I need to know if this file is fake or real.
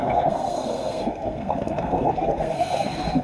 fake